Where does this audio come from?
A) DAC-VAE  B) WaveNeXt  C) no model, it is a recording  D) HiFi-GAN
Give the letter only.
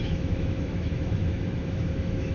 A